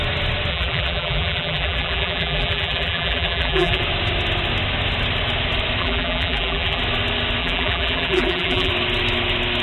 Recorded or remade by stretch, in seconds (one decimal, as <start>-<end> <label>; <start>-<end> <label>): 0.0-0.5 recorded; 0.5-3.8 remade; 3.8-5.8 recorded; 5.8-6.8 remade; 6.8-7.4 recorded; 7.4-8.7 remade; 8.7-9.6 recorded